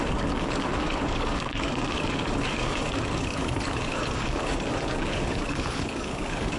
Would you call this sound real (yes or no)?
no